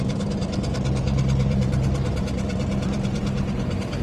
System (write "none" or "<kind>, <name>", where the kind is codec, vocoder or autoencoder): vocoder, BigVGAN v2